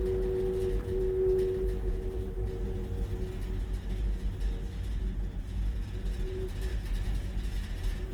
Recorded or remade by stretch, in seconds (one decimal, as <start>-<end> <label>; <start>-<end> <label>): 0.0-2.8 remade; 2.8-5.0 recorded; 5.0-8.1 remade